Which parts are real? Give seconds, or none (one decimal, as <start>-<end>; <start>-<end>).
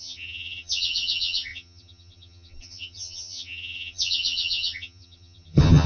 none